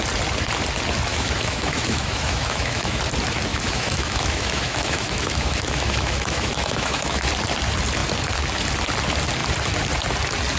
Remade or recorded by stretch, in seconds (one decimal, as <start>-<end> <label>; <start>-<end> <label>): 0.0-1.1 recorded; 1.1-3.0 remade; 3.0-3.5 recorded; 3.5-7.3 remade; 7.3-10.6 recorded